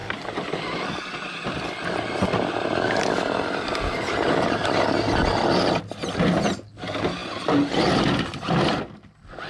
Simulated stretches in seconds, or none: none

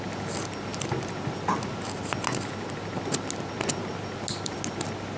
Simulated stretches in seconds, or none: none

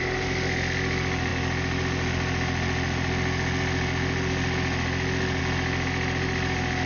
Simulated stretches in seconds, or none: none